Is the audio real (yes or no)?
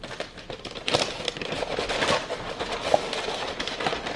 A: yes